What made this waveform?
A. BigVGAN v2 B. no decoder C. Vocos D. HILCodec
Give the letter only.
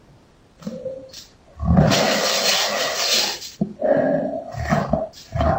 B